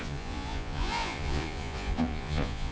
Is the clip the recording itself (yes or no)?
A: no